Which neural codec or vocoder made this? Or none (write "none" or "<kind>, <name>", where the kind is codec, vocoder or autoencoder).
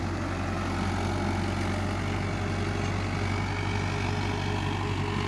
none